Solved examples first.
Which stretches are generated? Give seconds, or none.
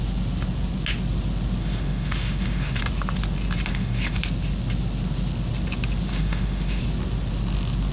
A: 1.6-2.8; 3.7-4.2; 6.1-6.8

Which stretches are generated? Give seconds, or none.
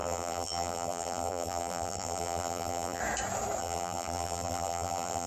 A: 0.0-3.0; 3.6-5.3